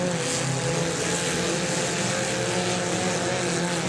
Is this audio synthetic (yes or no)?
no